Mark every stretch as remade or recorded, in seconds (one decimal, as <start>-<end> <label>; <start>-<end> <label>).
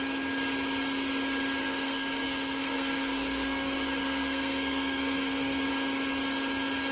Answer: 0.0-1.6 recorded; 1.6-5.7 remade; 5.7-6.9 recorded